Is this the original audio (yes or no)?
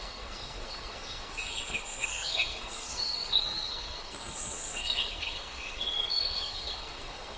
no